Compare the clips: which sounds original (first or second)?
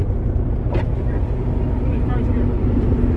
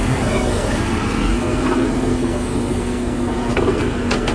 first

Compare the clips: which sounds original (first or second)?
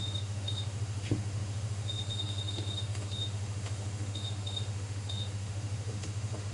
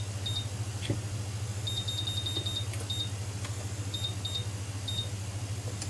second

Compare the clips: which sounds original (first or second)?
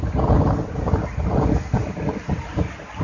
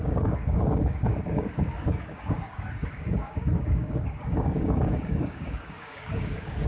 first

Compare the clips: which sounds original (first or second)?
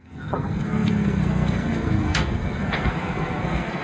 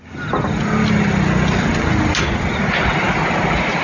second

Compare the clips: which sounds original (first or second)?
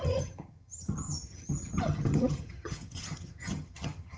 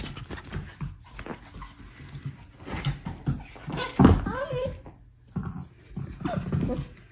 second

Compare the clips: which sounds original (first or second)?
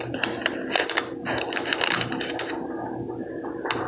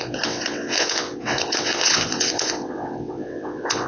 first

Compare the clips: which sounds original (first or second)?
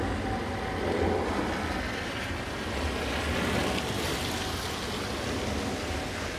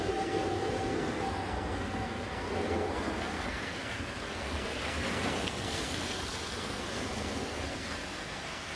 first